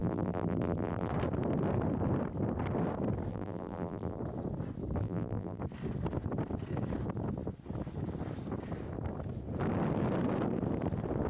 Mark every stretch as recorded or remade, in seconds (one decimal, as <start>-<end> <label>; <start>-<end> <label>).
0.0-1.1 remade; 1.1-3.3 recorded; 3.3-4.2 remade; 4.2-5.0 recorded; 5.0-5.6 remade; 5.6-11.3 recorded